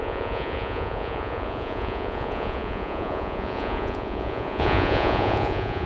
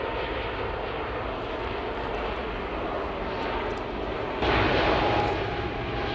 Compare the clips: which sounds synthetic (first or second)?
first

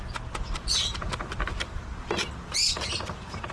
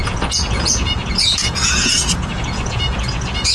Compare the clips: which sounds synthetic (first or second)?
second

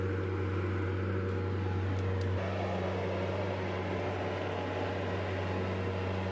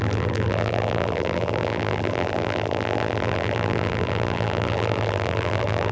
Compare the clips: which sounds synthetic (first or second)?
second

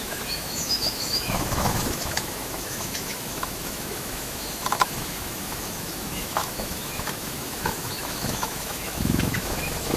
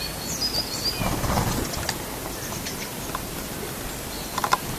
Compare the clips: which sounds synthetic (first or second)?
first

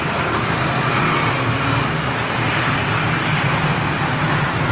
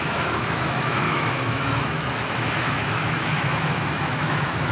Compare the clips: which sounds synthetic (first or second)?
second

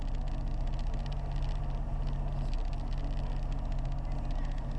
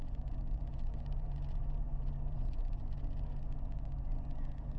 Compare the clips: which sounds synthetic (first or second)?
second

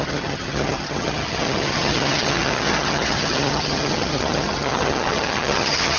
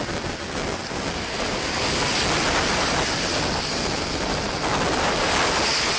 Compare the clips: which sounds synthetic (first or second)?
first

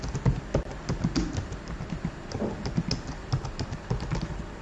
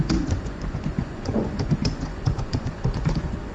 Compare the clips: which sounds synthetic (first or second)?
second